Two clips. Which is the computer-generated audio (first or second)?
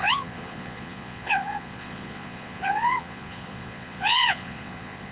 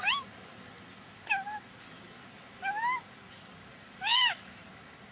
first